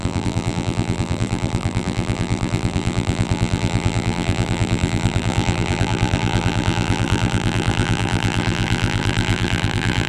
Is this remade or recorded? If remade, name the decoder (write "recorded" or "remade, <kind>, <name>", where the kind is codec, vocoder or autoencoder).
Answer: remade, vocoder, BigVGAN v2